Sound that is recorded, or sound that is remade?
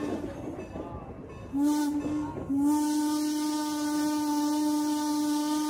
recorded